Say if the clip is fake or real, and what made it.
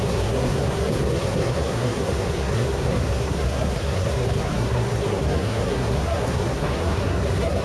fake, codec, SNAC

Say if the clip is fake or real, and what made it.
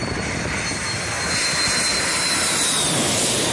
real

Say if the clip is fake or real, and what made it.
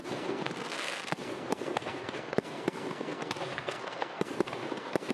fake, codec, SNAC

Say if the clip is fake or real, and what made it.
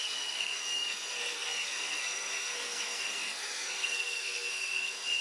fake, codec, SNAC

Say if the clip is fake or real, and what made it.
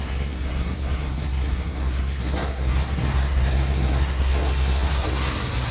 fake, codec, SNAC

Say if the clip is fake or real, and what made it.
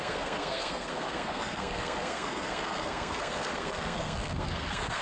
fake, codec, SNAC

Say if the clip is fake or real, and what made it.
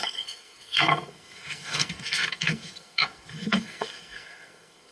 fake, codec, SNAC